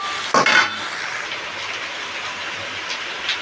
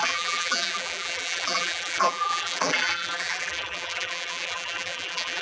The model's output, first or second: second